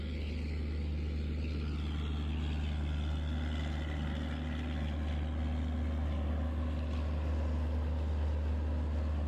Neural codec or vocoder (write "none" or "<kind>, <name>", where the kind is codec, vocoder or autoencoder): none